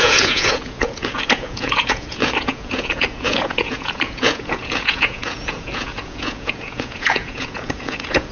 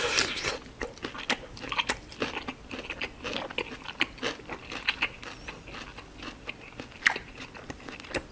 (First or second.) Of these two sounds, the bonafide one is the second